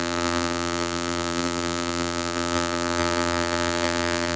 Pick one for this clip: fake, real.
fake